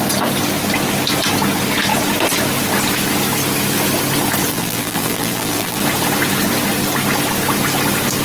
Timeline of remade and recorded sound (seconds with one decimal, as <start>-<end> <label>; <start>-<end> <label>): 0.0-4.5 recorded; 4.5-5.8 remade; 5.8-8.2 recorded